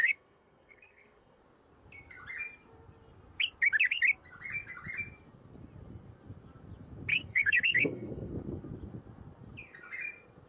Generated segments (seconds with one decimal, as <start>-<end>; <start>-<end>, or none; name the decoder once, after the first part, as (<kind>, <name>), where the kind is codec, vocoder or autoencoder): 0.0-1.4 (codec, SNAC); 7.1-8.3